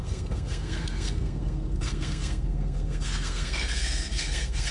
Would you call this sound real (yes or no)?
no